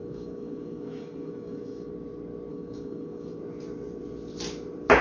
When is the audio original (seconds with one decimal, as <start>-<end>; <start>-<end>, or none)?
1.9-2.5; 3.4-5.0